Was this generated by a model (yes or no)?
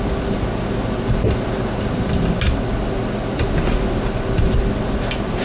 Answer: no